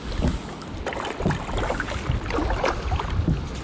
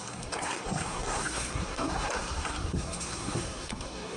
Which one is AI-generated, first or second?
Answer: second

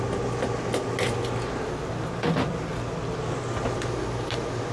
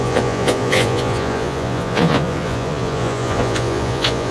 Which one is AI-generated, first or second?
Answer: second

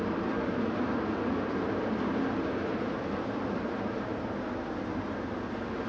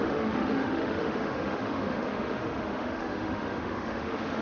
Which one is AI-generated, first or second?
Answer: second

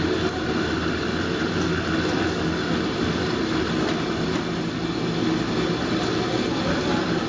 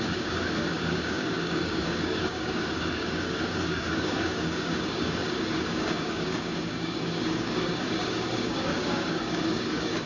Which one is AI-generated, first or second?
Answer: second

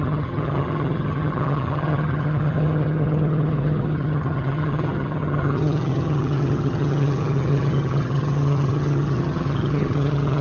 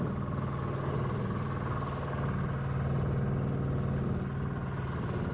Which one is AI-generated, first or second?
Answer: first